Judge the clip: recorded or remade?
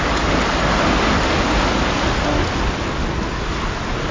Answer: recorded